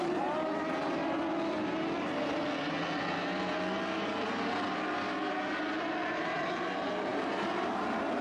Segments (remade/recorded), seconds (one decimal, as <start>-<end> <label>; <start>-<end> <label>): 0.0-1.0 remade; 1.0-5.9 recorded; 5.9-8.2 remade